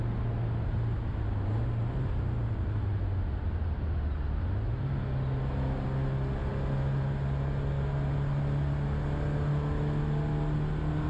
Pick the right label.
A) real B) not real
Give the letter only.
A